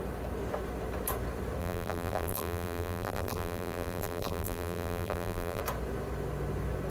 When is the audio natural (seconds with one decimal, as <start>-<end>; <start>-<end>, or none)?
0.0-1.6; 5.6-6.9